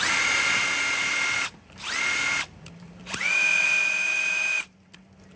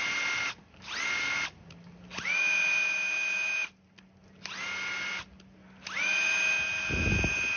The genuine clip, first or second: second